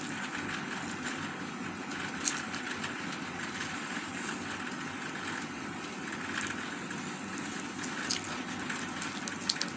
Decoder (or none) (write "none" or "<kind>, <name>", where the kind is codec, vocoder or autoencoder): none